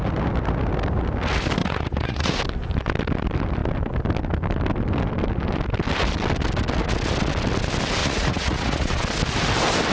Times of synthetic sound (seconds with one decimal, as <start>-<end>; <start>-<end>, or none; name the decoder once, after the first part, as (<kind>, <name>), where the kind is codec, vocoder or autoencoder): 1.6-2.4 (vocoder, Vocos); 8.0-9.0